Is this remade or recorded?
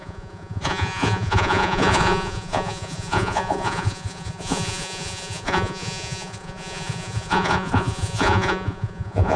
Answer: remade